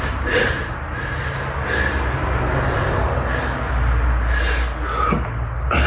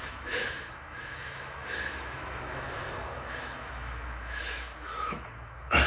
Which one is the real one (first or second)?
first